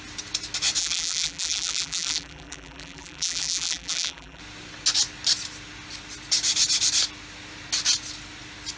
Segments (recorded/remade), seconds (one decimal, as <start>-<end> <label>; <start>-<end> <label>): 0.0-0.8 recorded; 0.8-4.4 remade; 4.4-8.8 recorded